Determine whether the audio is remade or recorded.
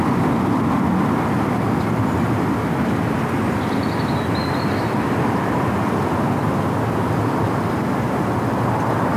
recorded